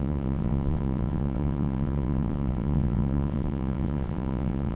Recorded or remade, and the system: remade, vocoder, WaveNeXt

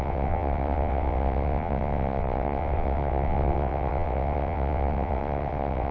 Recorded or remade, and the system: remade, vocoder, WaveNeXt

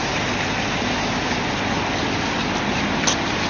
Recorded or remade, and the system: recorded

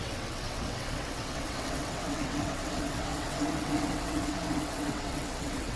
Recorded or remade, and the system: remade, vocoder, WaveNeXt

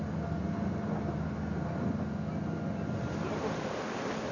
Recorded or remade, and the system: recorded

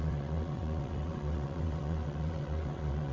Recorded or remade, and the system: remade, vocoder, WaveNeXt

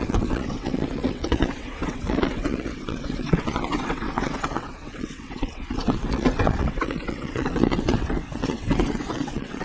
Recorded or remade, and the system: remade, vocoder, WaveNeXt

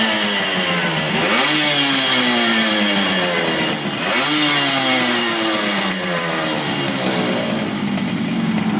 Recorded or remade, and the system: recorded